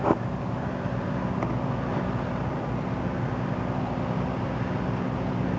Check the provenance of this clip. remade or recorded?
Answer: recorded